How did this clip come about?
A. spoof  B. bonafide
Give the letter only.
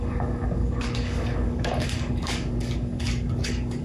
A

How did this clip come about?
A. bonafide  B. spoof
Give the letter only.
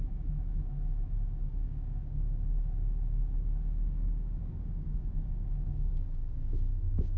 B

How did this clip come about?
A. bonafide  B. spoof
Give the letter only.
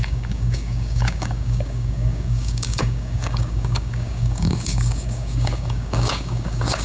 B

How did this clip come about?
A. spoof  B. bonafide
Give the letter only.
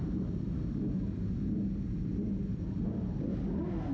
B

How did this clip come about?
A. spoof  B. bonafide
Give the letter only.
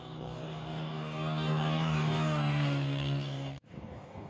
A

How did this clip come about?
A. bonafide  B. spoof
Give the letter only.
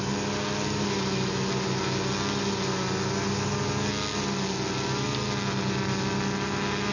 A